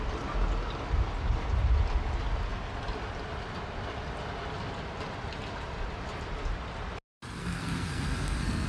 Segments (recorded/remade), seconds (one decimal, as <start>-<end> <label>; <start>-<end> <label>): 0.0-7.4 recorded; 7.4-8.7 remade